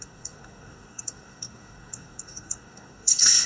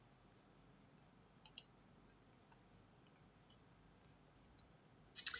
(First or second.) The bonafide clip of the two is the second